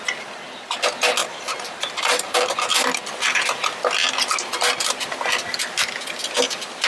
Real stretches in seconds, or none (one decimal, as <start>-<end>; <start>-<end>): 0.0-1.2; 2.5-6.9